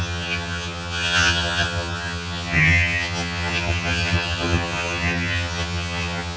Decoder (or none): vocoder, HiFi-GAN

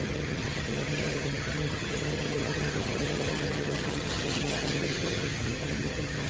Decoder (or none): vocoder, HiFi-GAN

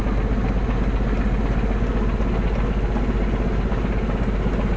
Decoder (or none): none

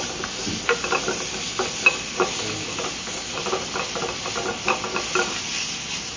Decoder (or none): none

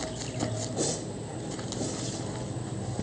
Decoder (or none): none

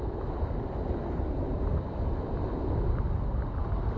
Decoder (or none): none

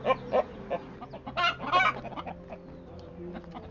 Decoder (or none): none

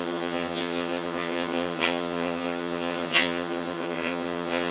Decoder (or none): vocoder, HiFi-GAN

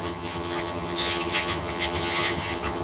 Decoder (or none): vocoder, HiFi-GAN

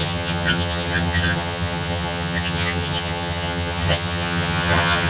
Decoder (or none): vocoder, HiFi-GAN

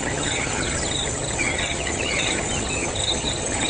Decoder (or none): vocoder, HiFi-GAN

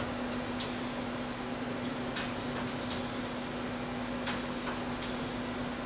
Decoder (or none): none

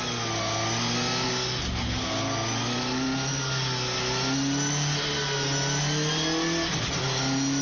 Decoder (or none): none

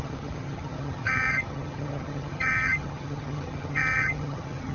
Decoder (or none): vocoder, HiFi-GAN